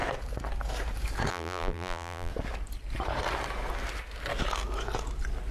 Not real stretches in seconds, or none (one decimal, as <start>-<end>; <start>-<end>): 1.3-2.3